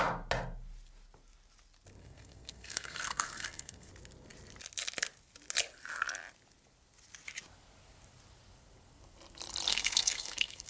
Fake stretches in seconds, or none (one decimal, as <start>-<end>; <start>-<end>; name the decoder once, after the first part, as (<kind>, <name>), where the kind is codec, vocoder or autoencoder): 2.0-3.9 (codec, SNAC); 9.7-10.7